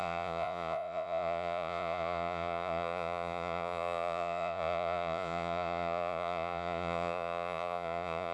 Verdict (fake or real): fake